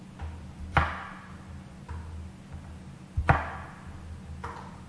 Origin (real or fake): real